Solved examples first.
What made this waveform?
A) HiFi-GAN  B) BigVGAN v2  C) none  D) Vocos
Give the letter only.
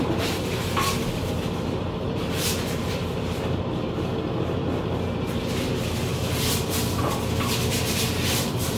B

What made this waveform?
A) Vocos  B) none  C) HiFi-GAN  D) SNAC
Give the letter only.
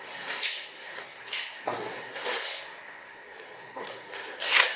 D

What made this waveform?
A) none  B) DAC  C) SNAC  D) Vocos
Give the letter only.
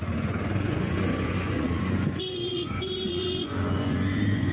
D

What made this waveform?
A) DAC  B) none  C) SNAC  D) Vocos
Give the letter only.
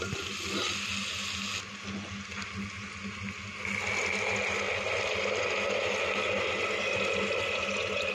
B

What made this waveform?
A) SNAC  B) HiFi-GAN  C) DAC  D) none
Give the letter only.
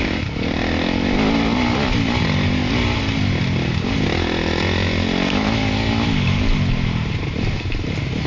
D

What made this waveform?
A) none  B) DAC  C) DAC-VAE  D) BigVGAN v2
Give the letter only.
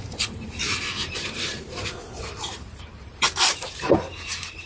D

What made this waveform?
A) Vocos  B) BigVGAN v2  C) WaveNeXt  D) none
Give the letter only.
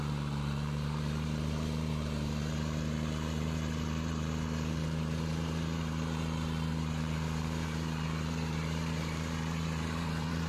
B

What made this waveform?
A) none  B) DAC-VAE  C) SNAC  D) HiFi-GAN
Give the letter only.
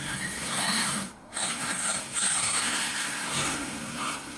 C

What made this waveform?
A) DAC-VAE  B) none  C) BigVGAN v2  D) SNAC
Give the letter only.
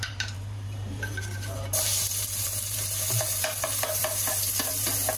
C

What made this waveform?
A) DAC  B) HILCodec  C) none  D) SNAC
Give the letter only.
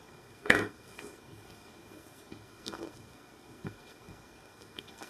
D